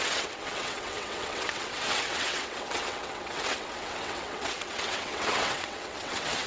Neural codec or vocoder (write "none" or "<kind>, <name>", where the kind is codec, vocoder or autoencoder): vocoder, WaveNeXt